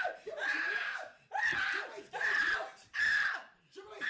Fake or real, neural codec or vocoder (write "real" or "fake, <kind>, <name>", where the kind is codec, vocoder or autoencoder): fake, vocoder, BigVGAN v2